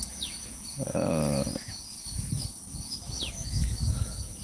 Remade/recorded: remade